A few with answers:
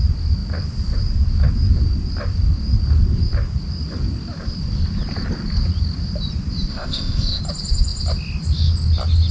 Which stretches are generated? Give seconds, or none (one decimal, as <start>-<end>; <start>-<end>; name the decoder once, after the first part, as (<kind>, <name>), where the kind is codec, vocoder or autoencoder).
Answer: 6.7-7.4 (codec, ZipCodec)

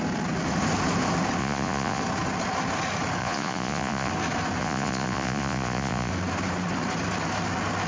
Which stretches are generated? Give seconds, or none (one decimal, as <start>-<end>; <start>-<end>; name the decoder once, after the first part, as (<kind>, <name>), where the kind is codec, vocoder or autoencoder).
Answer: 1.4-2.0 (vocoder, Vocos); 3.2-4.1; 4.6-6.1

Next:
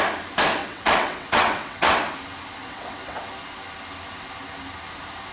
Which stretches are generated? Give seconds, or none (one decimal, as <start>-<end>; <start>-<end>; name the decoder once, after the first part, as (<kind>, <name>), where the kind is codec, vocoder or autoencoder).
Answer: 0.6-2.0 (vocoder, WaveNeXt); 2.6-3.2